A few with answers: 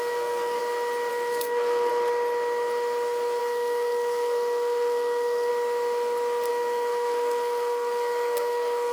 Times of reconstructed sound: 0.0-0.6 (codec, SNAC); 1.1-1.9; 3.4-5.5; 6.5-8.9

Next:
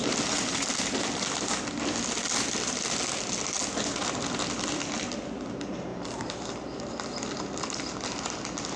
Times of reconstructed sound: none

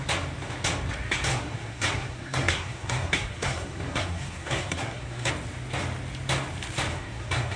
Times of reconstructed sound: 1.3-5.3 (codec, SNAC); 6.9-7.6

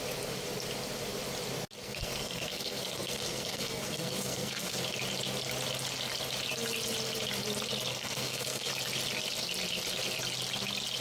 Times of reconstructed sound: 1.8-4.8 (codec, SNAC); 7.9-8.7

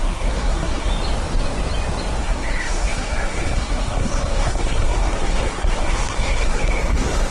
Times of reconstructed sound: 0.0-0.9 (codec, SNAC); 2.2-7.3

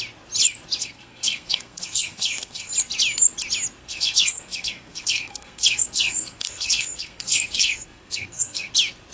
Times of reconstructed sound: 0.8-2.7 (codec, SNAC); 3.8-8.7

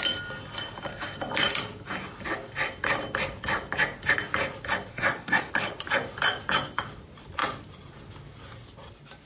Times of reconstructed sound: 4.9-5.5 (codec, SNAC)

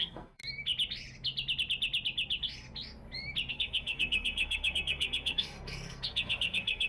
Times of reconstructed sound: 0.0-0.4 (codec, SNAC); 3.5-6.9